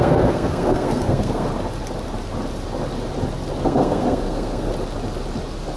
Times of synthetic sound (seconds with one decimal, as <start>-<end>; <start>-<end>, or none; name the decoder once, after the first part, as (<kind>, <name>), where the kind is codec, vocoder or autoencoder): 0.0-1.5 (codec, SNAC); 3.6-4.7